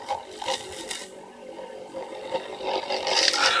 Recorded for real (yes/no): no